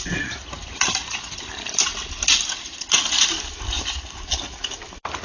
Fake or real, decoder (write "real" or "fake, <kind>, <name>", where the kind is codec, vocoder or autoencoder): real